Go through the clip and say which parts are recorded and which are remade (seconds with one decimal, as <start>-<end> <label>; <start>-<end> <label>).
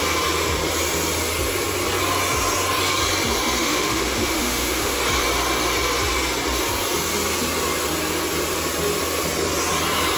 0.0-3.6 recorded; 3.6-5.0 remade; 5.0-10.2 recorded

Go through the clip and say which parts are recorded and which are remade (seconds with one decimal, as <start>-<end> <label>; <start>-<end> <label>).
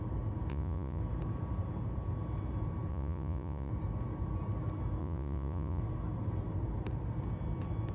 0.0-0.5 recorded; 0.5-1.0 remade; 1.0-2.9 recorded; 2.9-3.7 remade; 3.7-5.0 recorded; 5.0-5.8 remade; 5.8-7.9 recorded